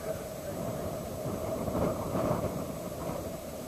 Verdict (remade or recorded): remade